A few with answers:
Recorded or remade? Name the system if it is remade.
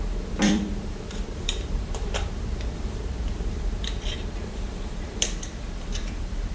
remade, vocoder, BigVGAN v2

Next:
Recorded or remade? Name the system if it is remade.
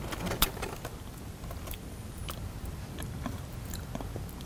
recorded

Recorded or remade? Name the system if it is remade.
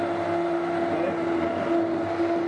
recorded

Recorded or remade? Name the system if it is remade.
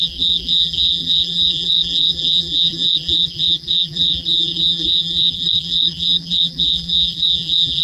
remade, vocoder, BigVGAN v2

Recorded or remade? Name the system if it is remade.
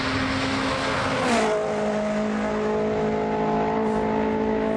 recorded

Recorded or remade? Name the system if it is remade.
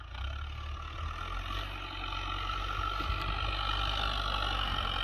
recorded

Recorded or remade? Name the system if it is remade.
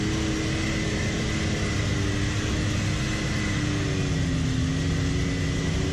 recorded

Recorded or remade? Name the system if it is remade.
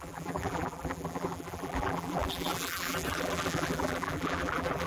remade, vocoder, BigVGAN v2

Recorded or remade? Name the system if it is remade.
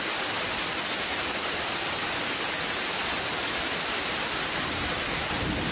recorded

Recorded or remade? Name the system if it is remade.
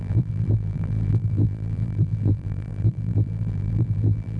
remade, vocoder, BigVGAN v2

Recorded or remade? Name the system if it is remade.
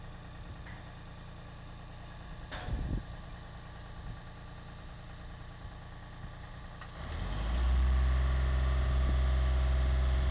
recorded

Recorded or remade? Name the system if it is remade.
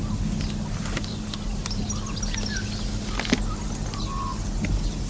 recorded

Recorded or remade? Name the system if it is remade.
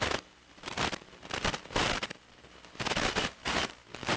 remade, vocoder, BigVGAN v2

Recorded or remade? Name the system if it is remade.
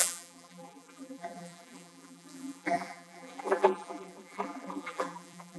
remade, vocoder, BigVGAN v2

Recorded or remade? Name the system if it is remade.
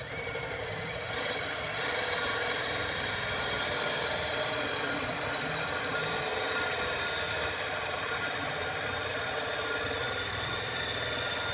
remade, vocoder, BigVGAN v2